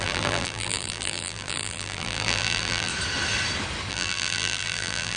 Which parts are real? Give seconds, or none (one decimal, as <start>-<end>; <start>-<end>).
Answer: 2.9-3.9